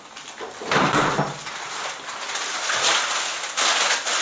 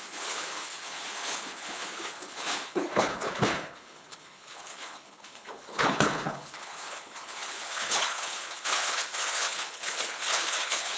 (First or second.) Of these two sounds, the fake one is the second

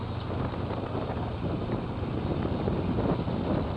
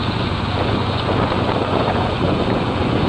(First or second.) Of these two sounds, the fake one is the second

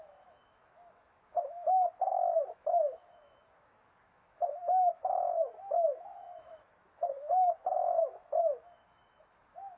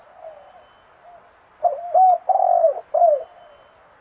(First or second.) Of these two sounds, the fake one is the first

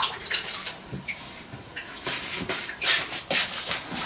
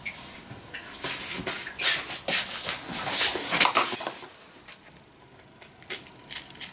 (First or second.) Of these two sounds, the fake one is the first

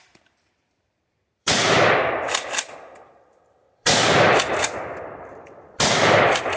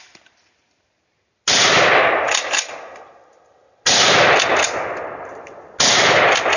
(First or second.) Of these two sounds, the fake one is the first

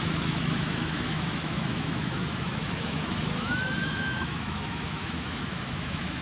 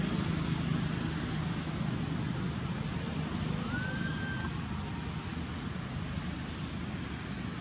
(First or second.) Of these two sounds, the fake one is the first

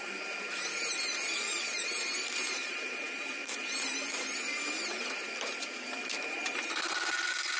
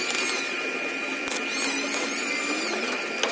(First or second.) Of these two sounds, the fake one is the first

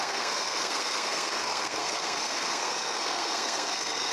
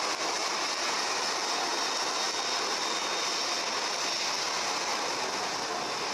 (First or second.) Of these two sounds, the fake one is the first